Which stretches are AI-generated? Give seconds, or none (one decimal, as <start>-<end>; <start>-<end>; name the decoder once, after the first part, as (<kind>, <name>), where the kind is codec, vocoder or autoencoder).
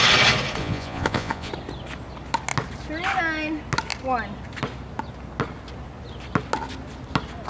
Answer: 0.6-1.5 (vocoder, Vocos)